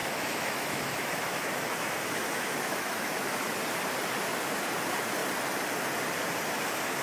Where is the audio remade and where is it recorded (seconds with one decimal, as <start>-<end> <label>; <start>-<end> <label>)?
0.0-3.6 remade; 3.6-7.0 recorded